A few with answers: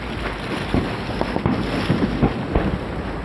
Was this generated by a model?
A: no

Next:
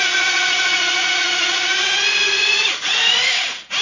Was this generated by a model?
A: yes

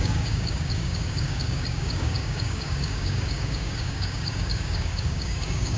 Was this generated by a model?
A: yes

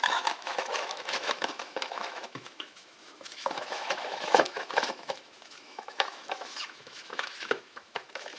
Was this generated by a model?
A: yes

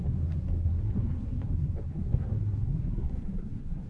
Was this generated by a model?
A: yes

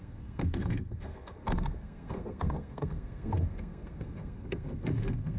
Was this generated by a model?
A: yes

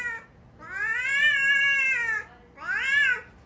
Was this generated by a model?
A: no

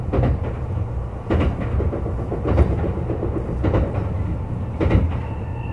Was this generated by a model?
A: no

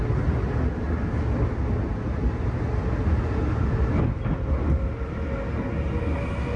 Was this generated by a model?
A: no